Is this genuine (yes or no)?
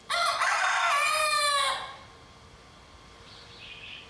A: yes